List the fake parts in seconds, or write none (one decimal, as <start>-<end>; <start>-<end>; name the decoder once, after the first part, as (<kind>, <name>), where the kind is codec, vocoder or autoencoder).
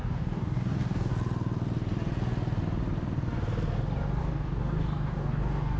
0.0-1.1 (codec, DAC); 4.2-5.8